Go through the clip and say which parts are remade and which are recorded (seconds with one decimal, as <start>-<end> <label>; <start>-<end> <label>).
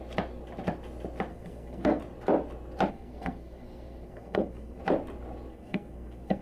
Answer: 0.0-1.3 recorded; 1.3-2.0 remade; 2.0-2.9 recorded; 2.9-4.8 remade; 4.8-5.5 recorded; 5.5-6.4 remade